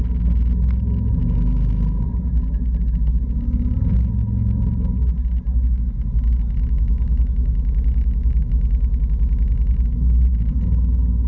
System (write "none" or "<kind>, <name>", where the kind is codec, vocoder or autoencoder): none